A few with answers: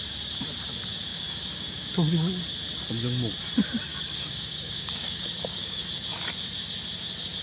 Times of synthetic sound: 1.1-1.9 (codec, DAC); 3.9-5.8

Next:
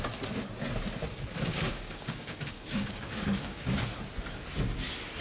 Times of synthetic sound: 1.5-3.7 (codec, DAC)

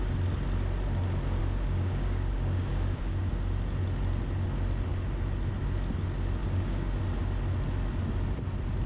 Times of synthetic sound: 1.4-3.3 (codec, DAC); 6.4-7.0

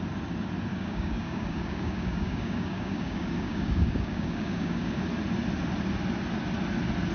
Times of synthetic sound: 0.7-5.0 (codec, DAC)

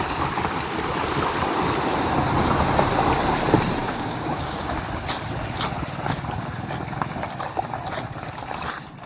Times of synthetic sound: 3.8-4.7 (codec, DAC)

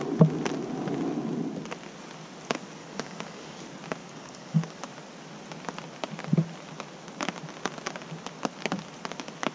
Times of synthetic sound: 2.8-3.6 (codec, DAC); 4.0-4.8